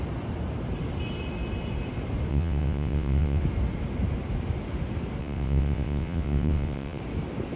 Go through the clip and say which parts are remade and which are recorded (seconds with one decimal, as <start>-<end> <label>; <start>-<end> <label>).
0.0-2.3 recorded; 2.3-3.4 remade; 3.4-5.2 recorded; 5.2-7.0 remade; 7.0-7.6 recorded